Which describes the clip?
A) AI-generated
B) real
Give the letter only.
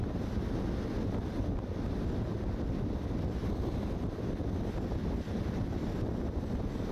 B